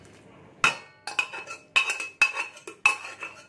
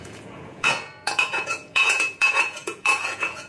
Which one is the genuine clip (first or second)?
first